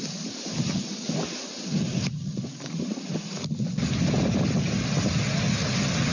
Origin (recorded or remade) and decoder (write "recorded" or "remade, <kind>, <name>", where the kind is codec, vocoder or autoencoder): recorded